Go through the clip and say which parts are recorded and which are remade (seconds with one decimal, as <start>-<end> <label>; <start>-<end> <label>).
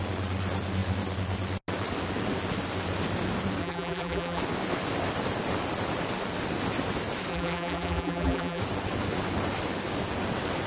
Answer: 0.0-3.6 recorded; 3.6-4.4 remade; 4.4-7.3 recorded; 7.3-8.6 remade; 8.6-10.7 recorded